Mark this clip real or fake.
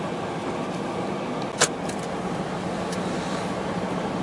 real